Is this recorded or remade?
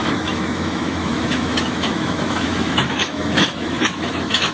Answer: remade